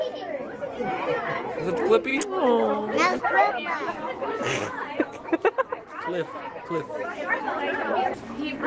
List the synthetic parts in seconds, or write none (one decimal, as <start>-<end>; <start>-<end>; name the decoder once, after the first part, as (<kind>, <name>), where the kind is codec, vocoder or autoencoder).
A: none